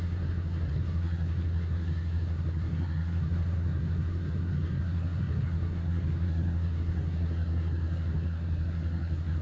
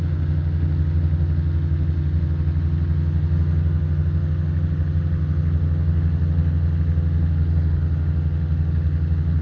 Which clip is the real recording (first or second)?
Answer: second